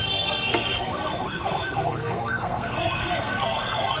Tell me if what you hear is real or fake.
fake